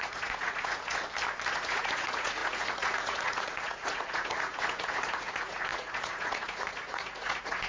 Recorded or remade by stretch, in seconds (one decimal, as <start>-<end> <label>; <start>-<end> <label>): 0.0-1.0 remade; 1.0-1.5 recorded; 1.5-7.7 remade